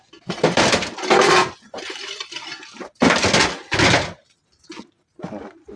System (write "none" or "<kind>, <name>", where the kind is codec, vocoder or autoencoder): none